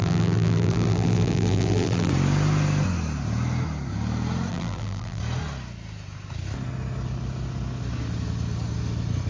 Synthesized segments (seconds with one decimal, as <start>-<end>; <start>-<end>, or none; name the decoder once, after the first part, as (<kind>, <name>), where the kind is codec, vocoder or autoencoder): 0.0-2.1 (vocoder, BigVGAN v2); 4.5-5.2